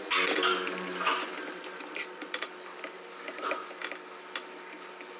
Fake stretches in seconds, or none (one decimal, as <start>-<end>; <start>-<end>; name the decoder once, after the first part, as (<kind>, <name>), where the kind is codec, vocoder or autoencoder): none